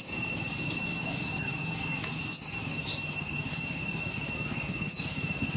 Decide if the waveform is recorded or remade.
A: remade